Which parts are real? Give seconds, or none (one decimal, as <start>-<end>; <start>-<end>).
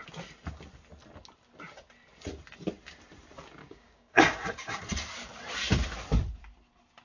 0.0-3.6; 4.8-7.0